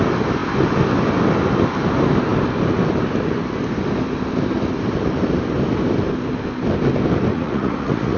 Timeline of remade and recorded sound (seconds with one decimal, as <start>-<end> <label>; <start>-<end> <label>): 0.0-7.3 recorded; 7.3-8.2 remade